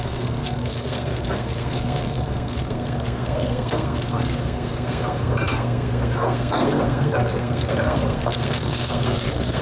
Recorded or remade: remade